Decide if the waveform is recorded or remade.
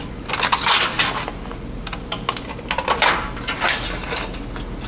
recorded